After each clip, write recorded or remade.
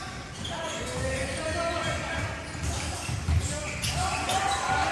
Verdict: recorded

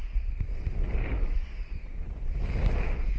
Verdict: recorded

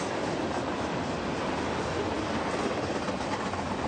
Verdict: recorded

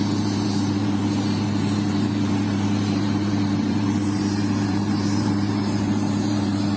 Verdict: remade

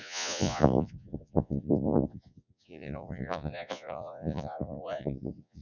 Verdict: remade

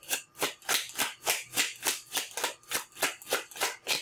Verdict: recorded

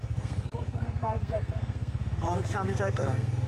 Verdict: remade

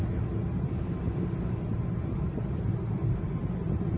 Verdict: recorded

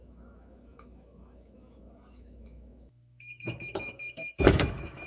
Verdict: remade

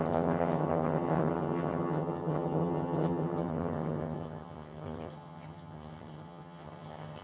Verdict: remade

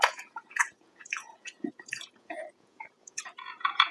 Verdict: remade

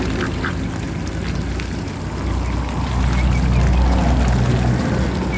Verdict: recorded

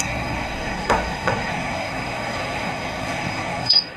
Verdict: remade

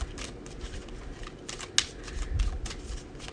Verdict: recorded